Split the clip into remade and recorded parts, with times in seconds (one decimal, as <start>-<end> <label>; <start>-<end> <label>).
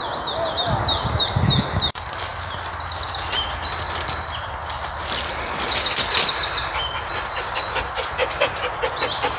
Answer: 0.0-9.4 recorded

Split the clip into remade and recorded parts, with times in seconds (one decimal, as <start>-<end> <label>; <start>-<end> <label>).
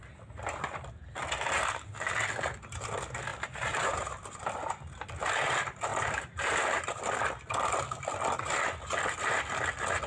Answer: 0.0-3.3 recorded; 3.3-4.8 remade; 4.8-5.9 recorded; 5.9-7.0 remade; 7.0-10.1 recorded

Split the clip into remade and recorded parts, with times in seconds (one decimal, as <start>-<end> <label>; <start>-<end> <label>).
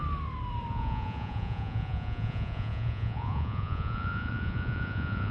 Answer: 0.0-0.7 recorded; 0.7-5.3 remade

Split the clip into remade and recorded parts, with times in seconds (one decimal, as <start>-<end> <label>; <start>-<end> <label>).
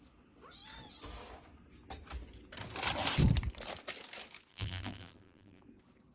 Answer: 0.0-4.5 recorded; 4.5-5.6 remade; 5.6-6.1 recorded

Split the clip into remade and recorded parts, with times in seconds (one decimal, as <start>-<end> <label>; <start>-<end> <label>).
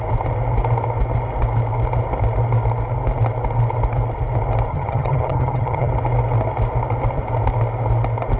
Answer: 0.0-4.7 recorded; 4.7-5.9 remade; 5.9-8.4 recorded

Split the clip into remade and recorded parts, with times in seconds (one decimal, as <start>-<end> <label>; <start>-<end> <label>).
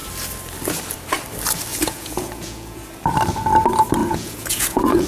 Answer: 0.0-1.7 recorded; 1.7-2.8 remade; 2.8-4.0 recorded; 4.0-5.1 remade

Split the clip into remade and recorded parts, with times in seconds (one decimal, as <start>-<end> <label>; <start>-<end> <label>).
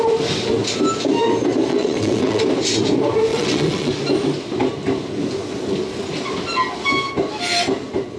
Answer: 0.0-1.7 recorded; 1.7-2.4 remade; 2.4-3.3 recorded; 3.3-3.9 remade; 3.9-8.2 recorded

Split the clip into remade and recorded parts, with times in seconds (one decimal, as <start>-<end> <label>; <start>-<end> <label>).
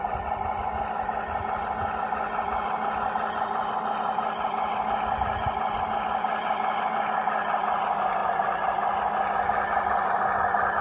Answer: 0.0-10.8 recorded